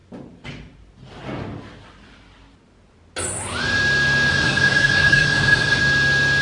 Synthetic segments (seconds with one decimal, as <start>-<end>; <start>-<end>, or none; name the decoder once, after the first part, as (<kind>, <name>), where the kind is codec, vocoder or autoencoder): 4.3-5.8 (codec, SNAC)